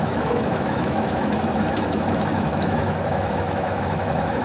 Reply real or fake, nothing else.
fake